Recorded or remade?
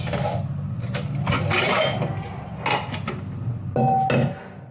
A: recorded